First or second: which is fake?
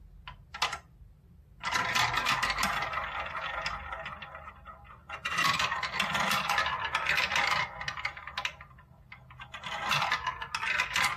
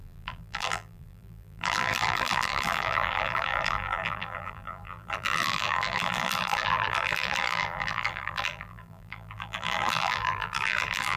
second